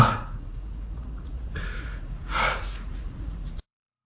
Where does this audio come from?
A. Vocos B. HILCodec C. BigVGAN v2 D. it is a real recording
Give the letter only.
A